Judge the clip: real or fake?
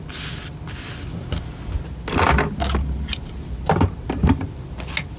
real